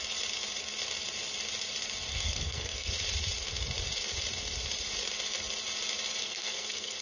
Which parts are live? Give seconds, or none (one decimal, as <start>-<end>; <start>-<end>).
0.0-2.1; 2.9-6.2